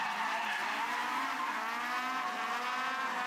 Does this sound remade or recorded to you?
recorded